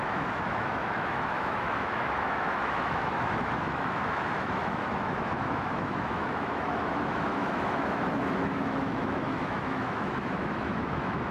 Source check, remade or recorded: remade